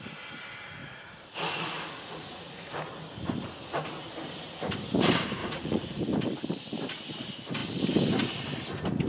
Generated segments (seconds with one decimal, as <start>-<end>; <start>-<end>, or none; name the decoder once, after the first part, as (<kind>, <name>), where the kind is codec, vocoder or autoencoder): 0.8-2.7 (vocoder, Vocos); 5.4-6.0